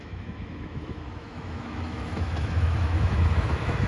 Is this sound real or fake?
fake